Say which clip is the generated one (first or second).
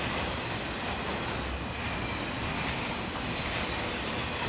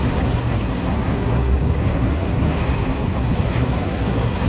second